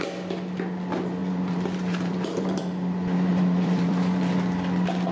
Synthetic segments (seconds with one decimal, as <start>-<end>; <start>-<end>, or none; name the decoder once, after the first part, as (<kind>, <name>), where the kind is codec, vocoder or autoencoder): 1.2-2.6 (vocoder, BigVGAN v2); 3.3-4.3